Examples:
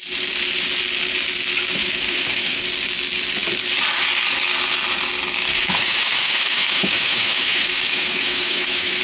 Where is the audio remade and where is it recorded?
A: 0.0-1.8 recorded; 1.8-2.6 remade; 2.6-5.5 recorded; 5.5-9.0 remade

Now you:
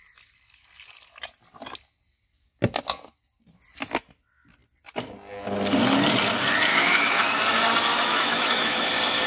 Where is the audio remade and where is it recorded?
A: 0.0-6.7 recorded; 6.7-7.4 remade; 7.4-7.9 recorded; 7.9-8.9 remade; 8.9-9.3 recorded

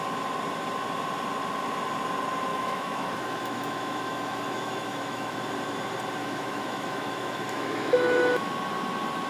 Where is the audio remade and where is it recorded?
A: 0.0-2.5 recorded; 2.5-5.3 remade; 5.3-6.2 recorded; 6.2-8.5 remade; 8.5-9.3 recorded

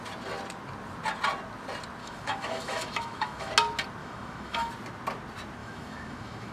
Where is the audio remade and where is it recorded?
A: 0.0-2.0 recorded; 2.0-3.5 remade; 3.5-4.0 recorded; 4.0-4.7 remade; 4.7-5.6 recorded; 5.6-6.5 remade

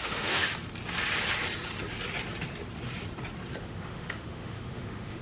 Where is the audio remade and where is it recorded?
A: 0.0-0.5 remade; 0.5-3.6 recorded; 3.6-5.2 remade

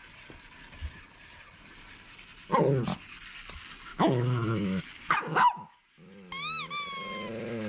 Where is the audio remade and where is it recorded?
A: 0.0-3.9 recorded; 3.9-4.8 remade; 4.8-5.3 recorded; 5.3-6.1 remade; 6.1-7.7 recorded

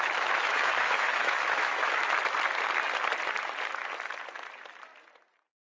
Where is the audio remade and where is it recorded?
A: 0.0-2.0 remade; 2.0-5.8 recorded

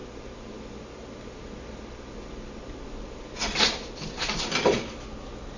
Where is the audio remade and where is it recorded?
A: 0.0-5.6 recorded